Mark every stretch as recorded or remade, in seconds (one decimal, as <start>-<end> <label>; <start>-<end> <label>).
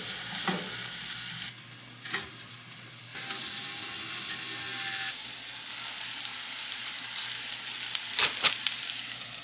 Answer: 0.0-3.1 recorded; 3.1-3.8 remade; 3.8-6.3 recorded; 6.3-7.0 remade; 7.0-8.1 recorded; 8.1-9.0 remade; 9.0-9.4 recorded